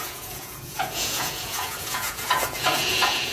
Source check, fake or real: fake